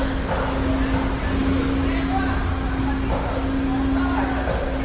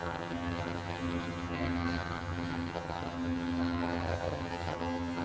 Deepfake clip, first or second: second